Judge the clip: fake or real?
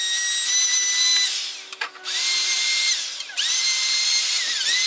real